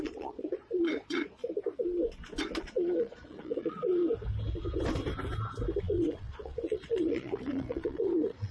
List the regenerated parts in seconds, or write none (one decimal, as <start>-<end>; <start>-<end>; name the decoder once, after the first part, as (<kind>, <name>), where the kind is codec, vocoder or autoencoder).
0.0-1.4 (vocoder, Vocos); 2.6-4.0; 5.8-8.5